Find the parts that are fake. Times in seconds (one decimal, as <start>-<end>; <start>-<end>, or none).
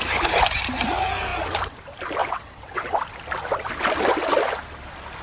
2.2-3.0